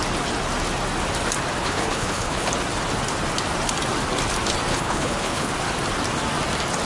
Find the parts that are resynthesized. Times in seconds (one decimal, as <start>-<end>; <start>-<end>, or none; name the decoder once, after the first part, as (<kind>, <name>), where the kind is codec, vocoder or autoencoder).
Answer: 1.6-2.5 (codec, HILCodec); 4.7-5.5